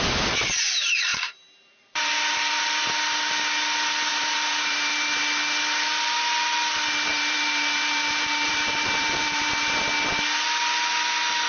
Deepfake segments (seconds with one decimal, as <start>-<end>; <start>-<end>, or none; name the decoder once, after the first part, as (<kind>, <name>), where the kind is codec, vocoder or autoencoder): 1.1-2.6 (vocoder, BigVGAN v2); 4.1-5.2; 7.1-9.8